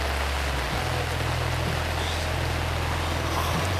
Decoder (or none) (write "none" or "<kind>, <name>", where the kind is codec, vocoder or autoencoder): none